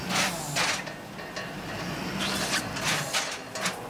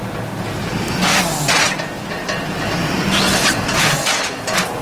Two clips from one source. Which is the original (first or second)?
first